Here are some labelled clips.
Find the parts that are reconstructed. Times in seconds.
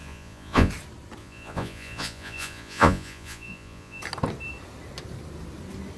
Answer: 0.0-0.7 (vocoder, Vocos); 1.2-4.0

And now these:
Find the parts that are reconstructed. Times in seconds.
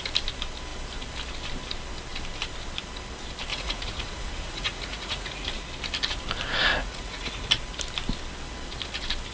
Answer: 3.5-5.6 (vocoder, Vocos); 6.6-7.5